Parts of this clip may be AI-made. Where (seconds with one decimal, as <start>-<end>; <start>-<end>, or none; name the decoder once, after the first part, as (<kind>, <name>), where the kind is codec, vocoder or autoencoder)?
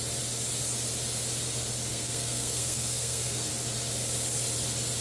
1.9-3.5 (codec, SNAC)